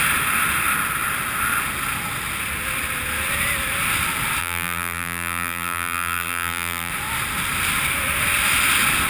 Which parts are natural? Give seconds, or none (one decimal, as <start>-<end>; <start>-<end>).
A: 0.0-4.4; 6.9-9.1